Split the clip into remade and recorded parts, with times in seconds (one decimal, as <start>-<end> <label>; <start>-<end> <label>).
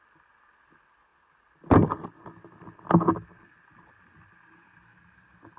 0.0-5.6 recorded